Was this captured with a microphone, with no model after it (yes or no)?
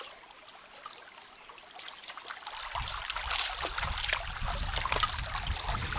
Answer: yes